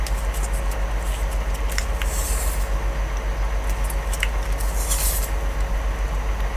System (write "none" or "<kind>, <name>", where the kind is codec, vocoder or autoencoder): none